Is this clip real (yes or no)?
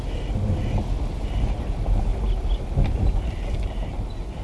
yes